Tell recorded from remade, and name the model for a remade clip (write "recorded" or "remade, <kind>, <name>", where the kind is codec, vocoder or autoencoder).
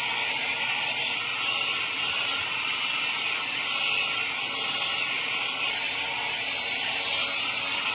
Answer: recorded